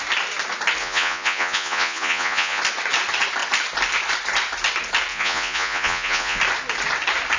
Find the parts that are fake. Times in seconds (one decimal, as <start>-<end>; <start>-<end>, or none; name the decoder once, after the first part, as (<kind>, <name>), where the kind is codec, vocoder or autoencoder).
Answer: 0.8-2.6 (vocoder, Vocos); 5.1-6.4